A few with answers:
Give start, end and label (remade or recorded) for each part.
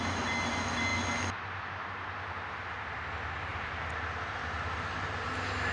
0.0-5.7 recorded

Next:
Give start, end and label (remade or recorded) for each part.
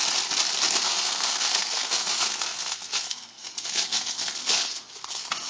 0.0-0.8 recorded; 0.8-5.5 remade